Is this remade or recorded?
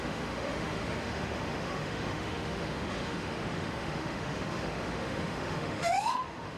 remade